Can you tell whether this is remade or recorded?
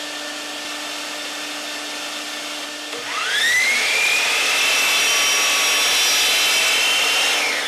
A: recorded